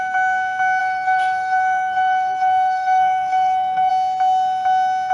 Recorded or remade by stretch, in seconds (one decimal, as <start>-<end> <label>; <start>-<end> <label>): 0.0-0.8 recorded; 0.8-3.9 remade; 3.9-5.1 recorded